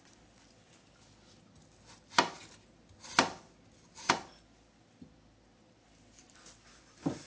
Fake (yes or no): no